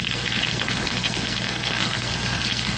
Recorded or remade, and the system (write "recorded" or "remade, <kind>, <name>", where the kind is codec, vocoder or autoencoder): remade, codec, SNAC